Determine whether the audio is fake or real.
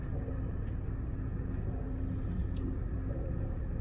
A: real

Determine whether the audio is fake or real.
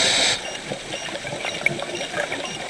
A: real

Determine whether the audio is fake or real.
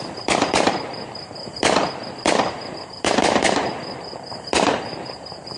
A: fake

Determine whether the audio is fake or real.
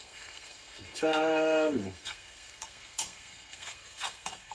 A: fake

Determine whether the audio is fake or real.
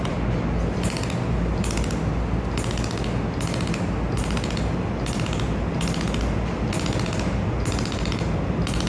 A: real